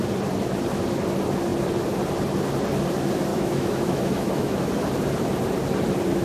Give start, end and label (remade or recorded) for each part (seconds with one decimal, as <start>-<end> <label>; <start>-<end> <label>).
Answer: 0.0-3.3 recorded; 3.3-4.7 remade; 4.7-6.2 recorded